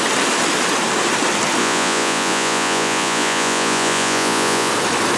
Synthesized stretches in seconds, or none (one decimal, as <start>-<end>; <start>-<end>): 1.6-4.7